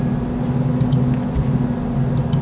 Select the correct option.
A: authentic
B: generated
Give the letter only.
A